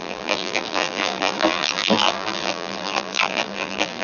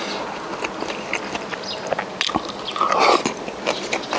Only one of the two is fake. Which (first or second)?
first